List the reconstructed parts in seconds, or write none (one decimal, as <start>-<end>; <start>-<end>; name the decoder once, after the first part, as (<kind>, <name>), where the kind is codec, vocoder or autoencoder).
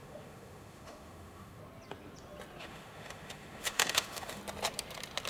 0.0-1.6 (autoencoder, DAC-VAE); 2.6-4.4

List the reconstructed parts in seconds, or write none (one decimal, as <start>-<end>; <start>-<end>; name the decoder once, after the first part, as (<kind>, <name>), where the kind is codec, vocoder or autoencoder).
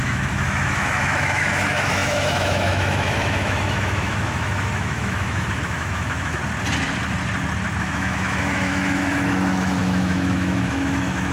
0.0-6.4 (autoencoder, DAC-VAE); 7.8-11.3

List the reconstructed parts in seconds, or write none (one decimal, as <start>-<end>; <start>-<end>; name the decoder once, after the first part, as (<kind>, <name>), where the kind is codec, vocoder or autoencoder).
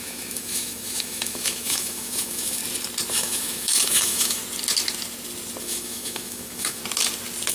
0.0-2.6 (autoencoder, DAC-VAE); 3.1-4.4; 5.6-6.8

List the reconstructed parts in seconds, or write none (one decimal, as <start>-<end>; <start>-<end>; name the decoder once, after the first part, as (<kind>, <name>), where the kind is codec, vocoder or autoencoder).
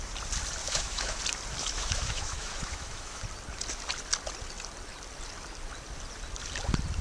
0.6-1.2 (autoencoder, DAC-VAE); 1.6-3.2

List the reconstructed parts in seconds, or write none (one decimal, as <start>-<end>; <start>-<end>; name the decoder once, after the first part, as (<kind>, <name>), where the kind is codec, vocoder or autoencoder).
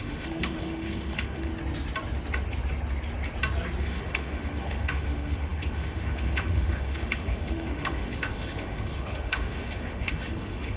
0.0-1.5 (autoencoder, DAC-VAE); 3.8-10.8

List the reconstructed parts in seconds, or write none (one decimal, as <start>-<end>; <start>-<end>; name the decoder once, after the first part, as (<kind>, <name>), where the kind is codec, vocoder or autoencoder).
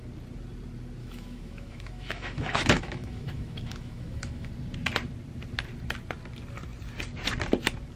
1.0-4.5 (autoencoder, DAC-VAE)